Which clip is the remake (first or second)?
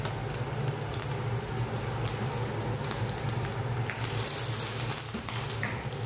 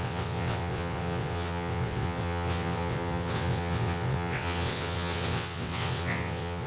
second